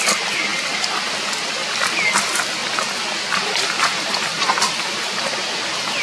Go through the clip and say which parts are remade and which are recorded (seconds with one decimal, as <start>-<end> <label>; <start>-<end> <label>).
0.0-6.0 recorded